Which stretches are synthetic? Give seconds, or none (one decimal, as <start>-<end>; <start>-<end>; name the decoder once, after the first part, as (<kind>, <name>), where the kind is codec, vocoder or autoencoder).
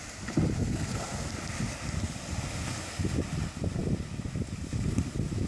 0.6-1.3 (codec, SNAC)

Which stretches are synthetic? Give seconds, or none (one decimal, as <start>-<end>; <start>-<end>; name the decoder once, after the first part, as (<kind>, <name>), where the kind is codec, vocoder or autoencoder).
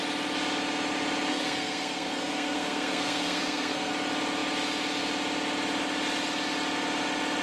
1.3-3.9 (codec, SNAC)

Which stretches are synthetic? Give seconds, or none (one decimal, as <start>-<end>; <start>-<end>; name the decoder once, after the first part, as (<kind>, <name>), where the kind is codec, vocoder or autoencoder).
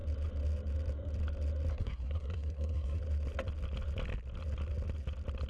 1.7-3.0 (codec, SNAC)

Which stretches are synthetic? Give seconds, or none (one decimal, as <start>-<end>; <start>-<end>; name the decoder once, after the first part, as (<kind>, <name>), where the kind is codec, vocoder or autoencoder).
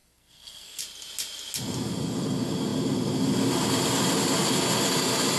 0.0-0.8 (codec, SNAC)